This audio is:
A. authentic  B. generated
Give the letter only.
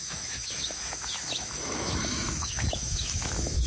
B